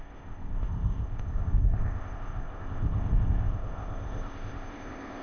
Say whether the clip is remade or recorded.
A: remade